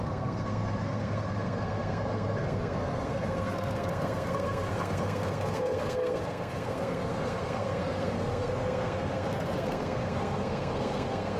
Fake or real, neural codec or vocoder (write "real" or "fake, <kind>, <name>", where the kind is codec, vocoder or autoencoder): fake, codec, SNAC